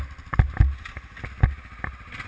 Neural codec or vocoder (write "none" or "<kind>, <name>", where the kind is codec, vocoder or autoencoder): none